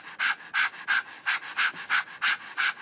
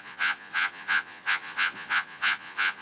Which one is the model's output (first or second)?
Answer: second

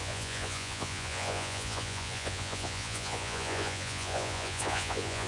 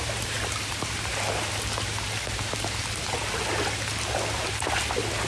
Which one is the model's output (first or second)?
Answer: first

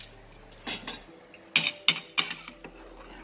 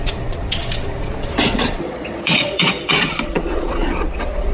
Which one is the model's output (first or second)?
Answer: second